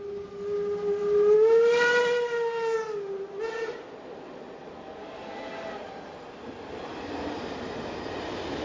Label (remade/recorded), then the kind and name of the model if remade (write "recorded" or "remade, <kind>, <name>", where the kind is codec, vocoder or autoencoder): recorded